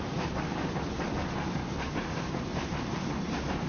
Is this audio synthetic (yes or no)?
no